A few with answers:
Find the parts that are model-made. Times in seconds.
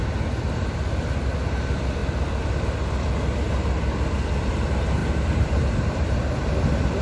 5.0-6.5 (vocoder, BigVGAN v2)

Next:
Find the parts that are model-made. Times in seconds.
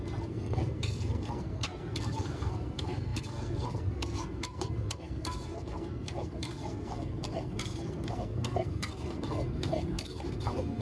0.0-10.8 (codec, SNAC)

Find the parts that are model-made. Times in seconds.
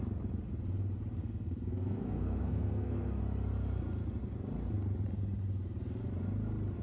1.2-3.2 (codec, SNAC)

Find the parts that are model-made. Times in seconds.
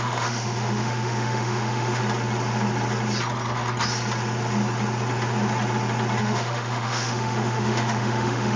0.0-2.0 (autoencoder, DAC-VAE); 6.2-8.6